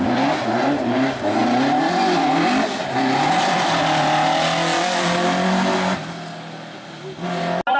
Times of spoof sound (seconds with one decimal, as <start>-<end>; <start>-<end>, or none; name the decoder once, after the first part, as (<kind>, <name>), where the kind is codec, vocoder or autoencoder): none